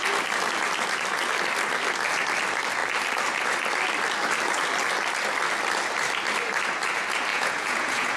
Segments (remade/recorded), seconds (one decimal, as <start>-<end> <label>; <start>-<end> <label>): 0.0-7.3 recorded; 7.3-8.2 remade